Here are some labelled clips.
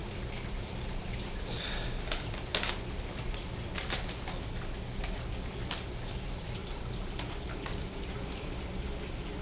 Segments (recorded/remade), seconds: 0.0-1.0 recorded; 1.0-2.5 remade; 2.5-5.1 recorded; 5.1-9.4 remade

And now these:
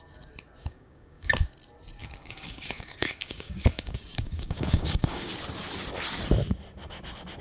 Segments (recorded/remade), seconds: 0.0-0.6 recorded; 0.6-1.3 remade; 1.3-2.0 recorded; 2.0-5.3 remade; 5.3-7.4 recorded